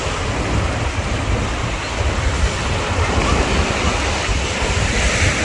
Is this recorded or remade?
recorded